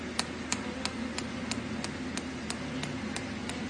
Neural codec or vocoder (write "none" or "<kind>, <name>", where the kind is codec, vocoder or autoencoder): none